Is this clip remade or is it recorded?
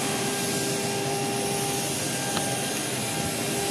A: recorded